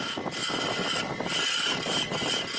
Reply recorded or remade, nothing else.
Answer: recorded